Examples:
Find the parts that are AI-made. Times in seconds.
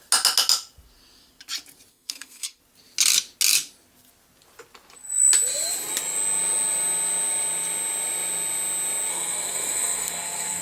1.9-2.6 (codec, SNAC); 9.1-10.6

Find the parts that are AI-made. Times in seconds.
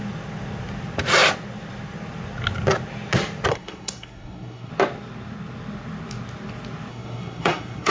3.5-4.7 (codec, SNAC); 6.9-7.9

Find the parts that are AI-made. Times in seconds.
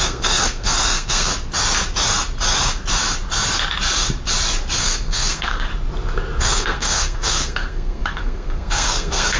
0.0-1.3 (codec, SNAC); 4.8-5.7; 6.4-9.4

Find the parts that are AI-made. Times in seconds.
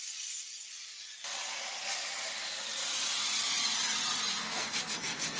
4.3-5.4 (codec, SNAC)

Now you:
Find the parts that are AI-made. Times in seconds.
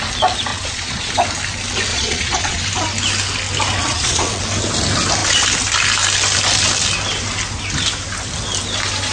0.5-1.1 (vocoder, Vocos); 1.9-2.6; 3.8-4.4